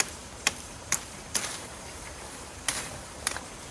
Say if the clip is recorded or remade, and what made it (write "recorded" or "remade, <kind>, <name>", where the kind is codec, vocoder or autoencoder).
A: remade, vocoder, BigVGAN v2